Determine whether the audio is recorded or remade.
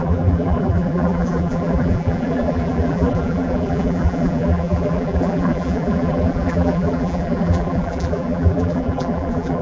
remade